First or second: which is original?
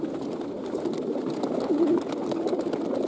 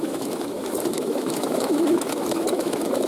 first